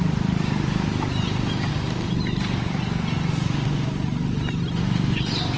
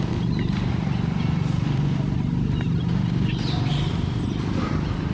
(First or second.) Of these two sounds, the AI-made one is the second